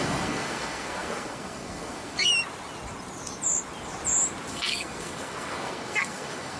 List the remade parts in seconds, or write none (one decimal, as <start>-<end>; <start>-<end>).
0.0-2.3; 4.5-6.6